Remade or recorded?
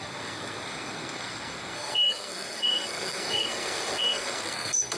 remade